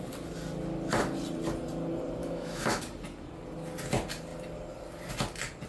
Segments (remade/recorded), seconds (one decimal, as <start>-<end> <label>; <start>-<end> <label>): 0.0-2.2 recorded; 2.2-2.8 remade; 2.8-5.7 recorded